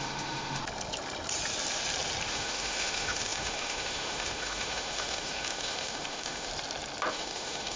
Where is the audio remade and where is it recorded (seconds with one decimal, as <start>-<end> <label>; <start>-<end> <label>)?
0.0-0.6 remade; 0.6-2.3 recorded; 2.3-6.5 remade; 6.5-7.1 recorded; 7.1-7.8 remade